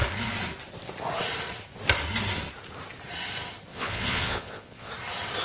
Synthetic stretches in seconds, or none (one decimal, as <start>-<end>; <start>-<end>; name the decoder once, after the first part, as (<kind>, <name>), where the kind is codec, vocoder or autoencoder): 3.7-4.9 (vocoder, Vocos)